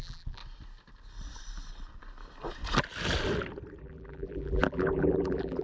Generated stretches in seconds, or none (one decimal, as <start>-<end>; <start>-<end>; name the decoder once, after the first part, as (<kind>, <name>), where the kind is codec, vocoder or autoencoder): 0.0-0.4 (vocoder, BigVGAN v2); 3.8-5.6